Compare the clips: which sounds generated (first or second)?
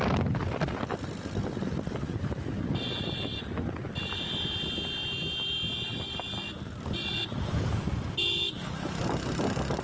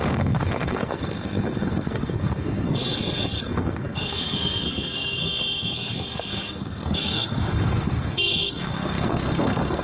second